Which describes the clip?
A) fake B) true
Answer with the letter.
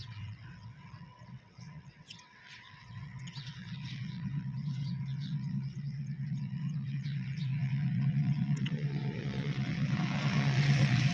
A